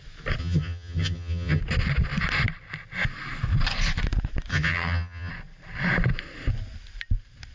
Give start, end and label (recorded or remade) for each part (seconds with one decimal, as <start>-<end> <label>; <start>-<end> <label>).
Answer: 0.0-0.4 recorded; 0.4-1.6 remade; 1.6-4.5 recorded; 4.5-5.3 remade; 5.3-7.5 recorded